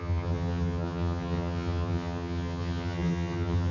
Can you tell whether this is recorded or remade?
remade